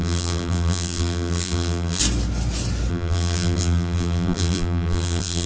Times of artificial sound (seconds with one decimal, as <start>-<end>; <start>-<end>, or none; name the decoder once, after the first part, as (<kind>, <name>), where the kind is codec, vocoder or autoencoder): 0.0-2.0 (vocoder, BigVGAN v2); 2.9-5.5